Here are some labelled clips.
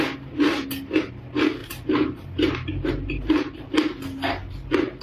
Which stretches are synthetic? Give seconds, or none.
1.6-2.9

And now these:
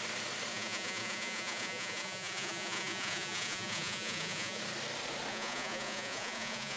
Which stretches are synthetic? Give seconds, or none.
0.5-4.6; 5.3-6.8

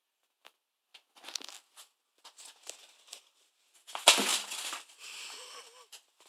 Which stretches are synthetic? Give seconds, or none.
4.3-5.3

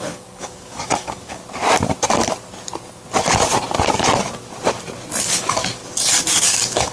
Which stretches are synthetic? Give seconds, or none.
0.0-1.4; 5.2-5.8; 6.4-6.9

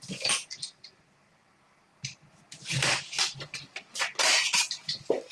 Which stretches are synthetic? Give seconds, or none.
0.0-1.9; 4.2-5.3

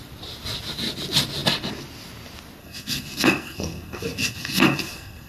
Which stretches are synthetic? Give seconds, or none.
2.6-5.3